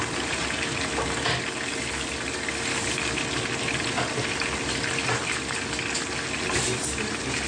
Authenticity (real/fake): real